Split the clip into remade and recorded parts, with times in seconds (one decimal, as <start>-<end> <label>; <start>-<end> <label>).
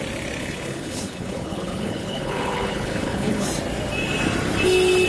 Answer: 0.0-0.4 recorded; 0.4-3.5 remade; 3.5-5.1 recorded